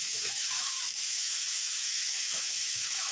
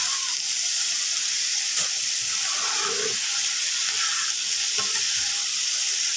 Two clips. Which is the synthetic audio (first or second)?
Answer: first